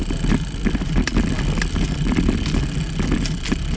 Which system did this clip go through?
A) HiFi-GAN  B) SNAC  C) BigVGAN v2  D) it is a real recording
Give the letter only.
D